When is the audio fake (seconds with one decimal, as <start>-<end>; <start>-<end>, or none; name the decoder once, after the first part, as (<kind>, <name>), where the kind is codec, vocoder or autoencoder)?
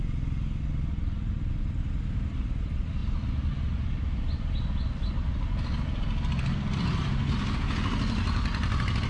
none